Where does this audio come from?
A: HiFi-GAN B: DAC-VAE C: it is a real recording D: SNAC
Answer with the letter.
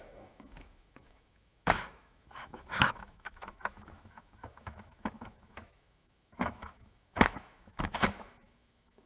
B